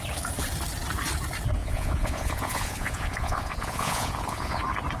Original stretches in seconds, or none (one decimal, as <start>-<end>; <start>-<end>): 0.0-1.6; 4.6-5.0